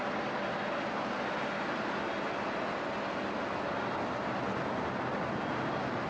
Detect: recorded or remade recorded